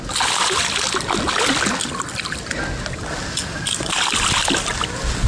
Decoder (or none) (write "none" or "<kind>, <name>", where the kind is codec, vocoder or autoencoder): none